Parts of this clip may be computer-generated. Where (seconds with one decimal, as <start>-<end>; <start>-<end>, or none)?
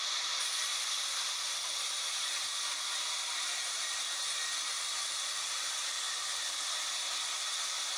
none